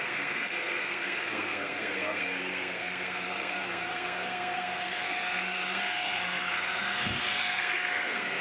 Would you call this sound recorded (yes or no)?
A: no